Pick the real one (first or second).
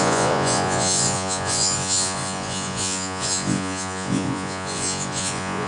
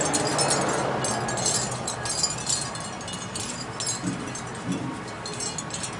second